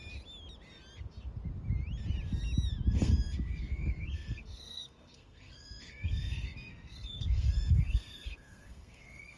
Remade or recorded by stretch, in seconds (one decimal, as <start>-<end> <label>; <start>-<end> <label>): 0.0-2.9 recorded; 2.9-9.4 remade